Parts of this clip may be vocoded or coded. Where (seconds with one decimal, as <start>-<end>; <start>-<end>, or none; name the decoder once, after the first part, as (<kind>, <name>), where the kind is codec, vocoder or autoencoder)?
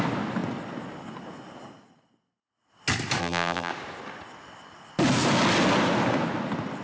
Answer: 3.2-3.7 (vocoder, BigVGAN v2)